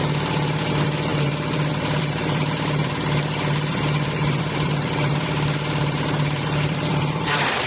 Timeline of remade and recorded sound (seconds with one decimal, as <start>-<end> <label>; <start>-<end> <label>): 0.0-7.7 remade